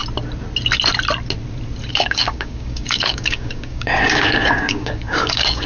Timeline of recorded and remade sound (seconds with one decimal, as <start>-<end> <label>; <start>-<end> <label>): 0.0-1.9 recorded; 1.9-5.7 remade

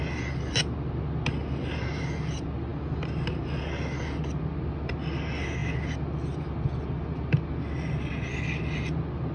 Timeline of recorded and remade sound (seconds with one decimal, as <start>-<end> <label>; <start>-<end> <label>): 0.0-9.3 recorded

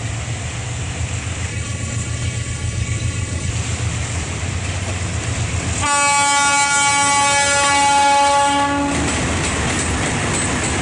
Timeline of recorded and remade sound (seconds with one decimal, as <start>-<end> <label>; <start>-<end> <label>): 0.0-1.5 recorded; 1.5-3.5 remade; 3.5-10.8 recorded

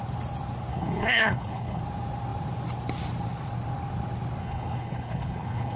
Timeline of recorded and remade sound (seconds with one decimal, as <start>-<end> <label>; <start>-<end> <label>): 0.0-0.7 recorded; 0.7-1.8 remade; 1.8-4.4 recorded; 4.4-5.8 remade